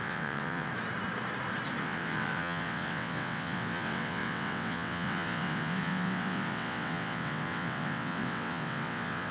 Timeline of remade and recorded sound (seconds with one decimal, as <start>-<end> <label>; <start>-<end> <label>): 0.0-0.7 remade; 0.7-1.8 recorded; 1.8-9.3 remade